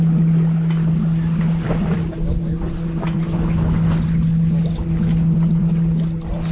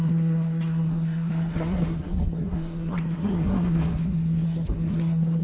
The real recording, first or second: first